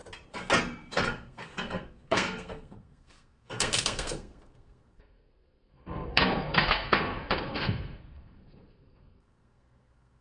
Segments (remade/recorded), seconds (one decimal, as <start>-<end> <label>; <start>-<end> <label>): 0.0-0.9 recorded; 0.9-10.2 remade